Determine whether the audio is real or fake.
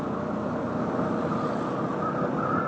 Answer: real